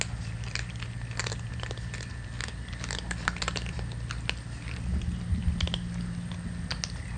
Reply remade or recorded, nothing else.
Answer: recorded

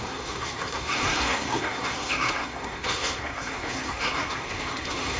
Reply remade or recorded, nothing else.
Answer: remade